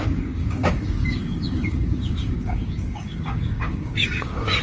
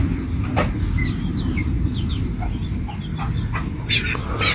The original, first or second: second